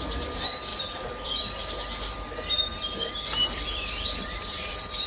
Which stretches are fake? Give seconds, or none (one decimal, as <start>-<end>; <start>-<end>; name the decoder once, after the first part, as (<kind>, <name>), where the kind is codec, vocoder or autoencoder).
0.7-1.4 (vocoder, BigVGAN v2); 3.4-3.9